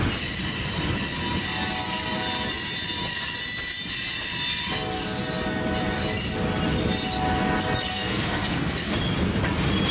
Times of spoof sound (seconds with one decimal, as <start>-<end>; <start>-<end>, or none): 7.9-8.9